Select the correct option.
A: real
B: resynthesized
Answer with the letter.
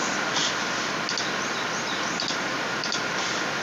A